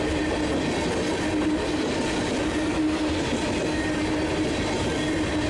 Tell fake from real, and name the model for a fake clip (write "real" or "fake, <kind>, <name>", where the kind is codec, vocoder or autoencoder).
real